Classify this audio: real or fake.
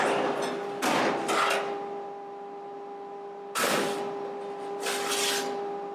real